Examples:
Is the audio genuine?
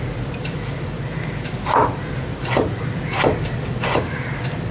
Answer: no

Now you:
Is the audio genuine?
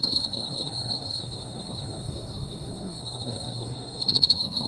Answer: no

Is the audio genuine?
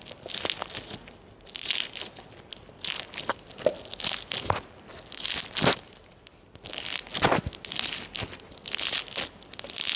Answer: yes